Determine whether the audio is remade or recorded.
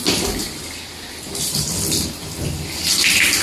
remade